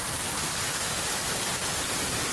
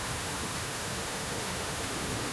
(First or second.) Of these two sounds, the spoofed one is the second